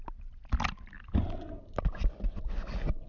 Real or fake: real